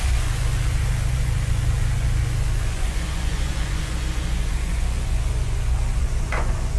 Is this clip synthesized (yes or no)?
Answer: yes